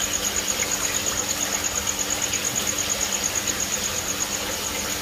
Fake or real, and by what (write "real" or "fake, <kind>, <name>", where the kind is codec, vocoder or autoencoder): real